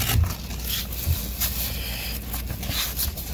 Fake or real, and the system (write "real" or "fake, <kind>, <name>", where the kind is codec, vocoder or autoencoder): real